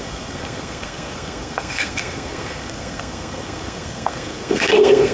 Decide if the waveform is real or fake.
fake